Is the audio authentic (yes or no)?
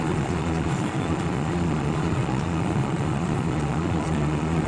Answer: no